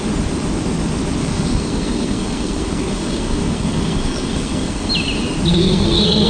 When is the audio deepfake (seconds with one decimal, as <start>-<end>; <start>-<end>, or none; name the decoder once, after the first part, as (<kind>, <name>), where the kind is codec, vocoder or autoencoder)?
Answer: 1.2-4.9 (codec, SNAC); 5.5-6.3